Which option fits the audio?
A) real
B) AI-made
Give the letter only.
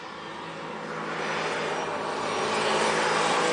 A